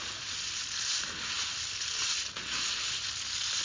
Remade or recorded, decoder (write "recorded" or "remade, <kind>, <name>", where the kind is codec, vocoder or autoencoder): recorded